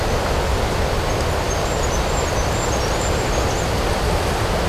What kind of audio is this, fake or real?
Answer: real